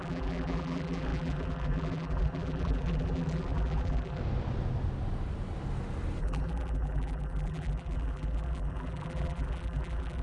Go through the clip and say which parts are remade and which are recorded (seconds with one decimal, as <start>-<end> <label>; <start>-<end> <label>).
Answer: 0.0-4.2 remade; 4.2-6.2 recorded; 6.2-10.2 remade